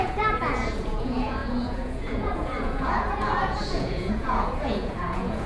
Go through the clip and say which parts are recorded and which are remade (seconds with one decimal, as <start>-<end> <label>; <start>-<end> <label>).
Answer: 0.0-5.5 remade